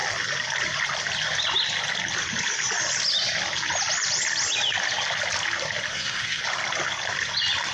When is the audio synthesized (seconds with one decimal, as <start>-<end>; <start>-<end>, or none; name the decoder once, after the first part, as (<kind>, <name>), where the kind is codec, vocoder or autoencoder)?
5.9-6.4 (codec, SNAC)